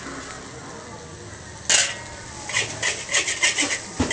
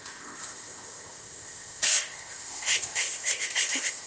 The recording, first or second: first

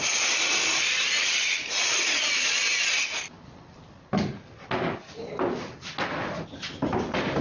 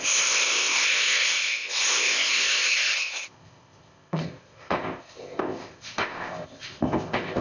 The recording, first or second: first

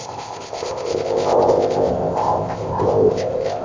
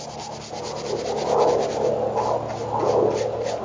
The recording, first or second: second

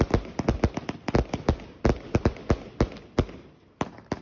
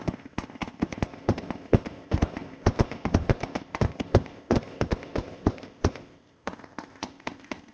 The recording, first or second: first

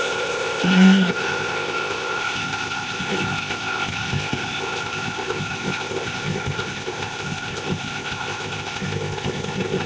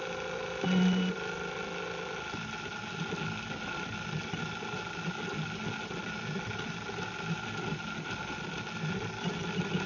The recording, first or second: second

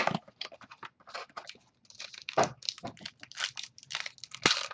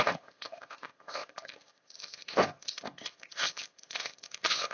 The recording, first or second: first